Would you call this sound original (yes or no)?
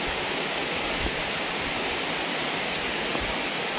yes